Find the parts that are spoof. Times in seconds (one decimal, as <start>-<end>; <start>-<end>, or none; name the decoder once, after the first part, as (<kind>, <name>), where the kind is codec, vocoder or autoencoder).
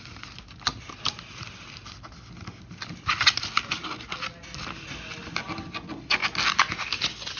none